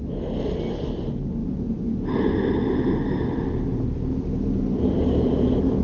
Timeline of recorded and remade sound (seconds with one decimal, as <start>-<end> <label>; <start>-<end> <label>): 0.0-5.8 recorded